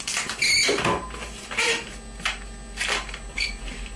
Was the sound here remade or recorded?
recorded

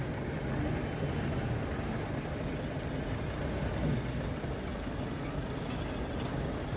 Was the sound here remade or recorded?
recorded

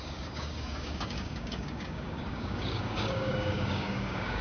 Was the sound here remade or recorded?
remade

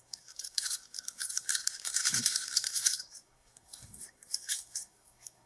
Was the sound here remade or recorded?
remade